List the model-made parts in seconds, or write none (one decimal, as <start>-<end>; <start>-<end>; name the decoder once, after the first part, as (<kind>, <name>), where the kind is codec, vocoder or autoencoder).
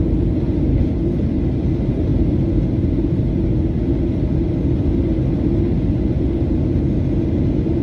0.7-1.4 (codec, HILCodec)